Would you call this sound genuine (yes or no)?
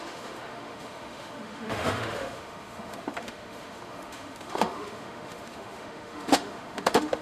no